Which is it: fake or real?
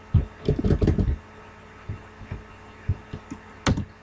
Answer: real